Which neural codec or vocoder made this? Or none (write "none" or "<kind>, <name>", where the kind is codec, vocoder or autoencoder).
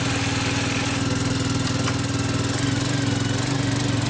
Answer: none